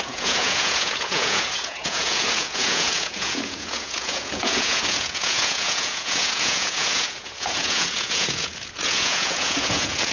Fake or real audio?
fake